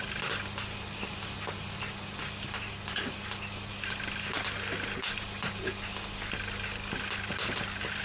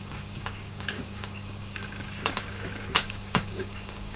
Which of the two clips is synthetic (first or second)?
second